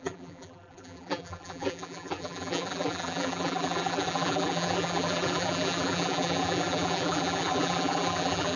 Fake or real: fake